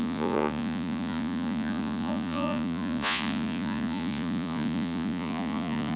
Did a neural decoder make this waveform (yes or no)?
yes